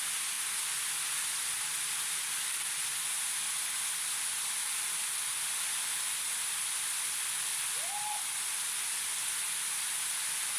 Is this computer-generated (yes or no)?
no